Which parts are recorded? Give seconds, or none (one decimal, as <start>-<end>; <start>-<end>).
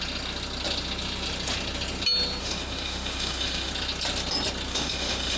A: 0.0-2.4; 3.7-4.7